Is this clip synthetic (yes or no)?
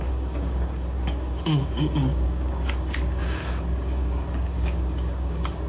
yes